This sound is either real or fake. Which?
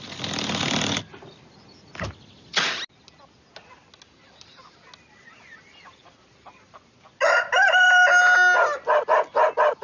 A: real